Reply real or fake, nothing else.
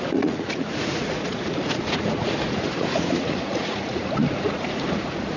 fake